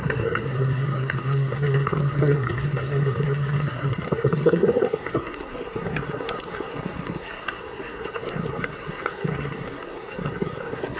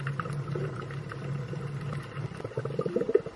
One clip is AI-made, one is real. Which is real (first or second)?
second